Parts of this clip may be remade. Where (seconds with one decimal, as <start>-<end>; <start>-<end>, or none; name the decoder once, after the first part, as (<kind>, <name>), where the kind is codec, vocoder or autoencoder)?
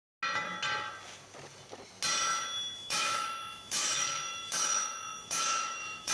2.3-6.1 (autoencoder, DAC-VAE)